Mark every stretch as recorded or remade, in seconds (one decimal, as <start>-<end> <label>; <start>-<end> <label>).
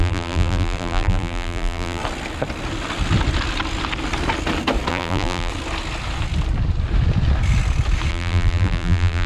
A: 0.0-2.0 remade; 2.0-4.9 recorded; 4.9-5.5 remade; 5.5-8.1 recorded; 8.1-9.3 remade